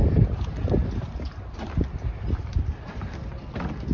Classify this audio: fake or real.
real